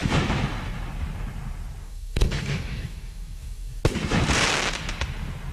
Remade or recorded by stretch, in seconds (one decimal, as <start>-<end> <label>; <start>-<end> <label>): 0.0-1.8 recorded; 1.8-3.8 remade; 3.8-5.5 recorded